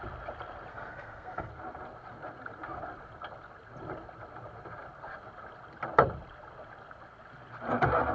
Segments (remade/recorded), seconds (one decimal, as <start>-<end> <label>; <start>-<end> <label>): 0.0-0.7 recorded; 0.7-1.5 remade; 1.5-8.1 recorded